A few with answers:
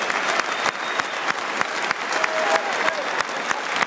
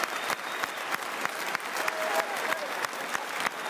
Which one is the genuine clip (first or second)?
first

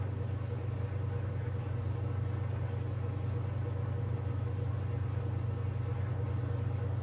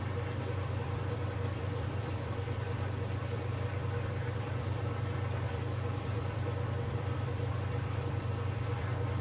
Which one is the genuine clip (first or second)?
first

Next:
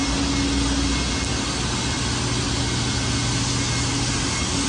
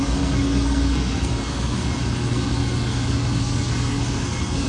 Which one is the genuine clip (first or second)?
first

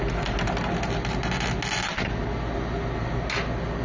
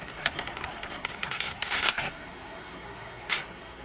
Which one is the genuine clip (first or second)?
first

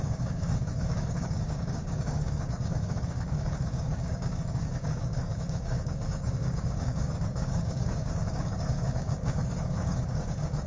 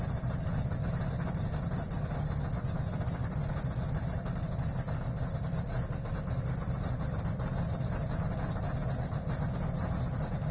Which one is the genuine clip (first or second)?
second